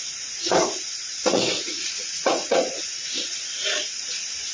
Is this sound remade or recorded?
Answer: remade